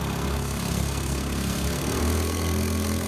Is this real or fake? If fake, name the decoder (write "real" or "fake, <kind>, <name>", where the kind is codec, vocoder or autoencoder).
fake, codec, SNAC